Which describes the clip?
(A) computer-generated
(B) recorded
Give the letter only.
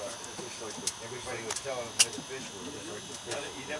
B